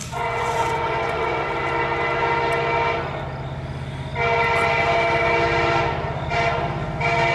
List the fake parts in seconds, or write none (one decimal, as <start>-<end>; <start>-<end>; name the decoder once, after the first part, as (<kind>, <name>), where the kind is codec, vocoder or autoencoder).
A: 0.0-1.4 (vocoder, Vocos)